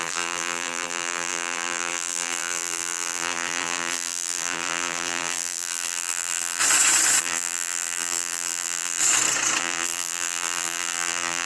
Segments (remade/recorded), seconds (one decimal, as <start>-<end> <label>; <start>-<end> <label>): 0.0-6.6 remade; 6.6-7.2 recorded; 7.2-9.0 remade; 9.0-9.6 recorded; 9.6-11.5 remade